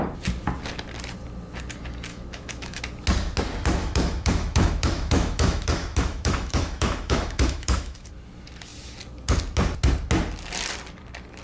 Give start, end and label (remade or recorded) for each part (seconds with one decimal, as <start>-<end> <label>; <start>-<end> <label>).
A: 0.0-2.1 recorded; 2.1-2.8 remade; 2.8-3.8 recorded; 3.8-8.1 remade; 8.1-11.4 recorded